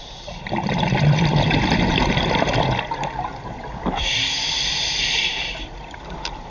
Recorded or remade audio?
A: remade